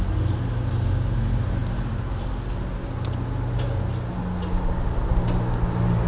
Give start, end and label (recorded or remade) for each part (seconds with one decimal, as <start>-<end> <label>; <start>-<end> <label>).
0.0-6.1 recorded